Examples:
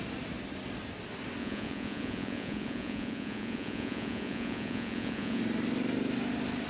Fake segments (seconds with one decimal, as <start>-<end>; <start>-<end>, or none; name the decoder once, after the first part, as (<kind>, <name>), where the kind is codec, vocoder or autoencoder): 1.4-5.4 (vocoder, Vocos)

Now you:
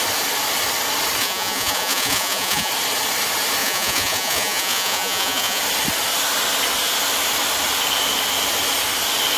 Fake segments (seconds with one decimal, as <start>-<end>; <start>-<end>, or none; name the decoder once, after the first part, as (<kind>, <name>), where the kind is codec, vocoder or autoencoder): 1.2-2.7 (vocoder, Vocos); 3.6-5.6

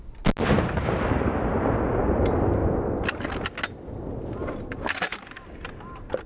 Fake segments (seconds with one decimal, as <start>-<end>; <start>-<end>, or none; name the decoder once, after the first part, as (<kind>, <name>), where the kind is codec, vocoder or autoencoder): none

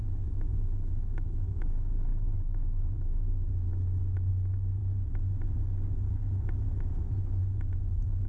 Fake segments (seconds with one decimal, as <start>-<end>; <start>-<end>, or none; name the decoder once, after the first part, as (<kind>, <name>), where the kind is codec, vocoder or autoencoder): 0.0-4.8 (autoencoder, DAC-VAE); 7.9-8.3